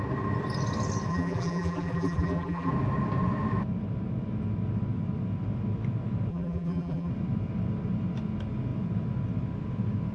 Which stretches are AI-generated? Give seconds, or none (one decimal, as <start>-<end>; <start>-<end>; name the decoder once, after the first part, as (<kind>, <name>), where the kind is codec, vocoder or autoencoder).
1.1-2.7 (vocoder, BigVGAN v2); 6.3-7.1